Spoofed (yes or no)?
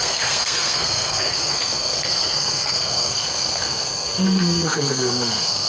yes